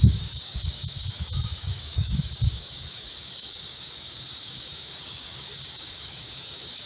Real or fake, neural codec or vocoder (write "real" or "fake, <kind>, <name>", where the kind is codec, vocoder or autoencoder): fake, codec, DAC